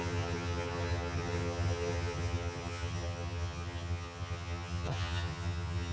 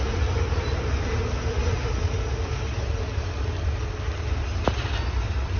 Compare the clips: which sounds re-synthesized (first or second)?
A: first